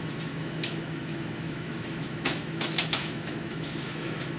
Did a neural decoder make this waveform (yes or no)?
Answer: yes